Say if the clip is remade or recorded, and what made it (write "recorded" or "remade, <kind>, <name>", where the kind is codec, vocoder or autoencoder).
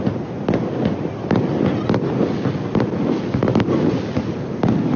recorded